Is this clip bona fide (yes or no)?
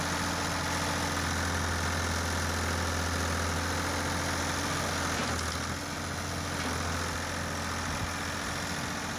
yes